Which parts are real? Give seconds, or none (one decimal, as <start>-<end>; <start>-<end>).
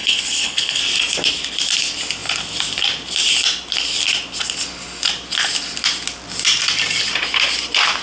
0.8-8.0